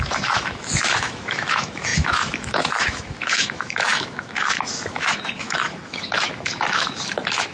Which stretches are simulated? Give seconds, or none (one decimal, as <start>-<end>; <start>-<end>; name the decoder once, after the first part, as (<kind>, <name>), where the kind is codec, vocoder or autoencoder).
0.0-7.5 (autoencoder, DAC-VAE)